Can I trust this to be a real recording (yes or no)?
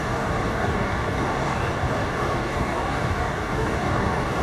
no